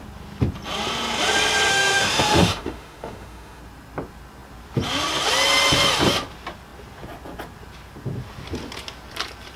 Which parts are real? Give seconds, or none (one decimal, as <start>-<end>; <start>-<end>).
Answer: 0.0-1.7; 3.6-9.6